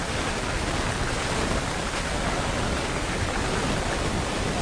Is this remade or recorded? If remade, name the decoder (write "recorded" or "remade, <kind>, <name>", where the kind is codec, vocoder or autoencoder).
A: recorded